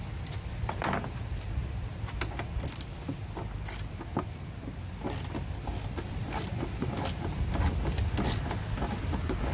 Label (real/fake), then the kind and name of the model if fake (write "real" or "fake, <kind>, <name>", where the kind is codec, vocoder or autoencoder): real